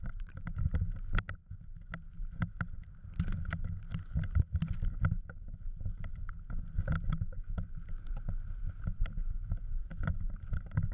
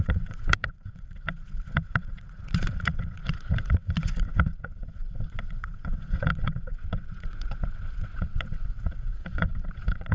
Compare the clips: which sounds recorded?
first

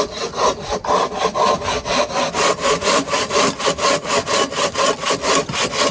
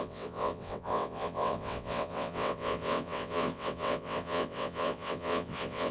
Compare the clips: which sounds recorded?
first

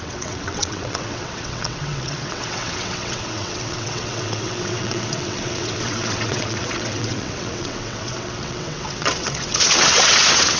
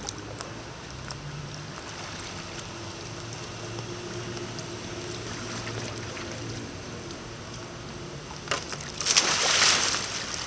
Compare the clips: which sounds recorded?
second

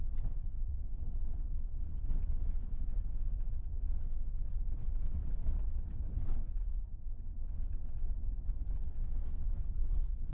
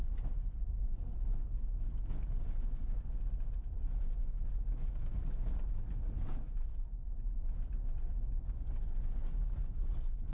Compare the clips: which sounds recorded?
second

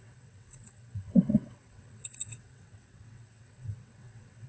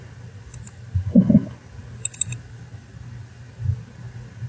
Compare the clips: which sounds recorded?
second